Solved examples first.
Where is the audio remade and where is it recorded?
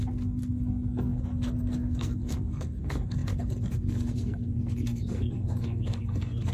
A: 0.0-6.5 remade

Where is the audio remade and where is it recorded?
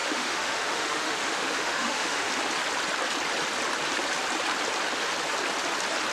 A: 0.0-2.3 remade; 2.3-6.1 recorded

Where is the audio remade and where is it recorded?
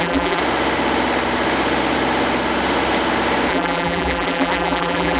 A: 0.0-0.4 remade; 0.4-3.5 recorded; 3.5-5.2 remade